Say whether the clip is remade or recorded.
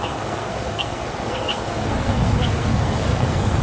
remade